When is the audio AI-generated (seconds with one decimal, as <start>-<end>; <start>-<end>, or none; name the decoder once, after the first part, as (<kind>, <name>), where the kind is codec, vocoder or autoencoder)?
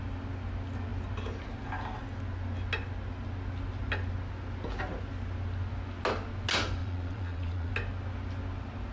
6.8-7.7 (vocoder, Vocos)